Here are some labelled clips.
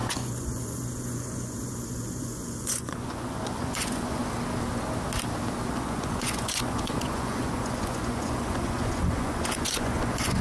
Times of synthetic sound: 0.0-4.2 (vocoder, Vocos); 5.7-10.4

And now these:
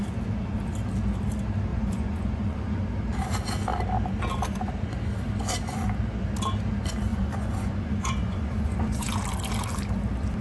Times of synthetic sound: 1.7-2.8 (vocoder, Vocos); 7.1-9.1

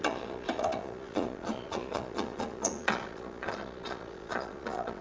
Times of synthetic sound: 0.0-5.0 (vocoder, Vocos)

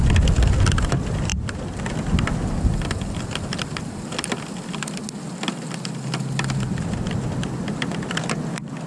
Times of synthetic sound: none